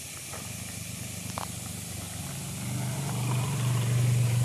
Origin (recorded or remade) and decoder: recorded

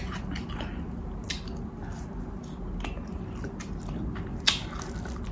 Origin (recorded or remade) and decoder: recorded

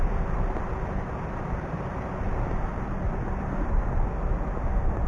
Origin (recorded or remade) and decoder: recorded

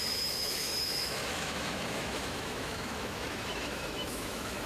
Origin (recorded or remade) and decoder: remade, autoencoder, DAC-VAE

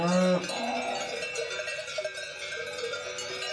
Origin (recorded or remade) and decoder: recorded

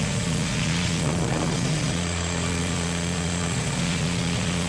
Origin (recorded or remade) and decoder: remade, vocoder, Vocos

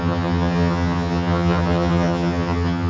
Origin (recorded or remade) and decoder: remade, vocoder, HiFi-GAN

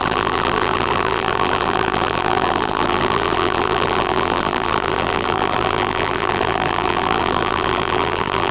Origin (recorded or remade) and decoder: remade, vocoder, BigVGAN v2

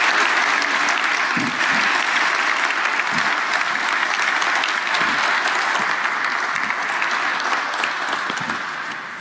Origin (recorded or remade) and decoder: recorded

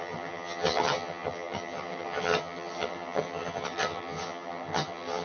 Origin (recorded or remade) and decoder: remade, vocoder, HiFi-GAN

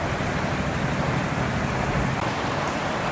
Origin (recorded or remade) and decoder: recorded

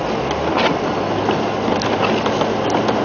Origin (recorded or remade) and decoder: recorded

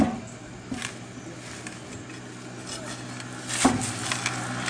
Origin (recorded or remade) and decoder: recorded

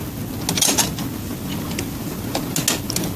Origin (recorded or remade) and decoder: recorded